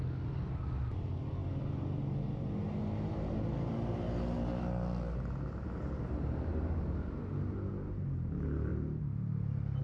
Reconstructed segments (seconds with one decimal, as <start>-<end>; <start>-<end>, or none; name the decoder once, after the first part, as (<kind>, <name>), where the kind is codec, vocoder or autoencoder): none